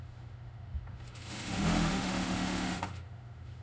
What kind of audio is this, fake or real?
fake